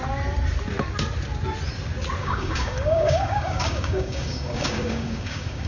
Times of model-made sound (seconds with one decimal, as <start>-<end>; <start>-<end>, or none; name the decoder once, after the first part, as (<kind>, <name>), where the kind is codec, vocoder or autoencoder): 2.2-5.7 (codec, DAC)